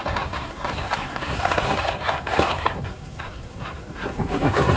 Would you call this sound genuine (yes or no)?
no